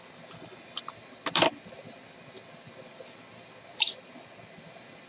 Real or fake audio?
real